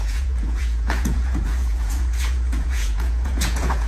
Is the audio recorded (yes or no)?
no